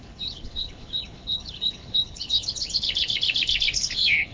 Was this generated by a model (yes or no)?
yes